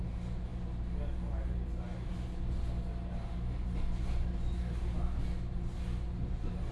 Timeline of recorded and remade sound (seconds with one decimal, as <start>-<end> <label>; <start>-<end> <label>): 0.0-6.7 recorded